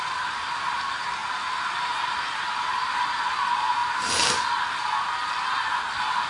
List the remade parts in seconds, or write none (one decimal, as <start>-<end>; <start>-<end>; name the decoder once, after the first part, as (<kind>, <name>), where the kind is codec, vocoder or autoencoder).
none